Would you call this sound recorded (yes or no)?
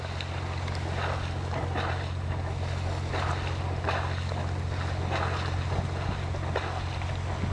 yes